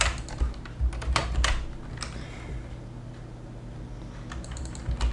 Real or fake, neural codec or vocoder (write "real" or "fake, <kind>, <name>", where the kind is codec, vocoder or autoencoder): real